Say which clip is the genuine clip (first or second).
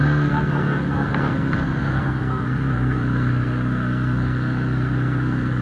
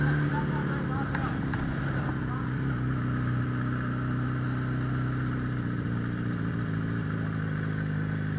second